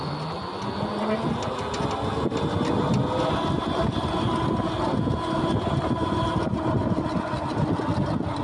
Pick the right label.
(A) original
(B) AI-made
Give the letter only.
A